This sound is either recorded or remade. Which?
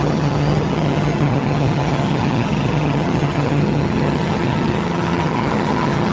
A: remade